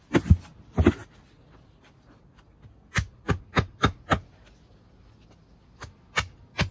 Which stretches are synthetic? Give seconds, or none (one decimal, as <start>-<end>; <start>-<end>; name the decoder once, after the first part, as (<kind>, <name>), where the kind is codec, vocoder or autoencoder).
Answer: none